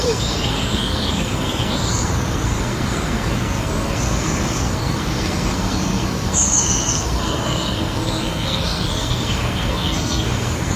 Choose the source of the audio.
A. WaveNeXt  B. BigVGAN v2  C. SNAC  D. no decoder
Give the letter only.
C